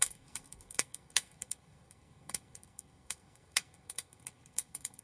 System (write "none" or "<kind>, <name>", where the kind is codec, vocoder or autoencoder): codec, SNAC